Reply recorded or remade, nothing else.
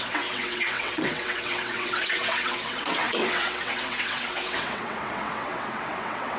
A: remade